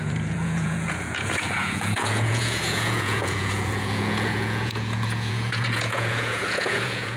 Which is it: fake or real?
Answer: fake